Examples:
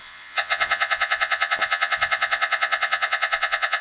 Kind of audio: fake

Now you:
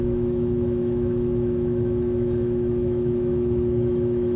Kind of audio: fake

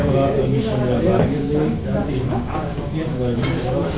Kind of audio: fake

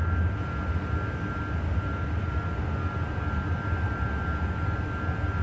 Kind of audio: real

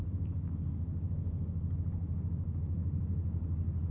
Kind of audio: real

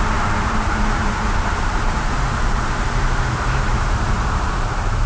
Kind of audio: fake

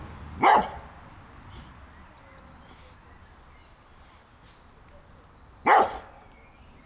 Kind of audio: real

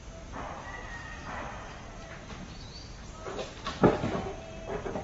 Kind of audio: real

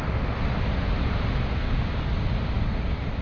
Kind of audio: real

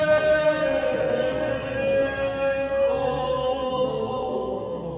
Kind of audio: fake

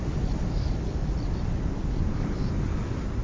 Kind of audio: real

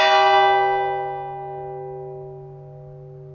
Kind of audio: real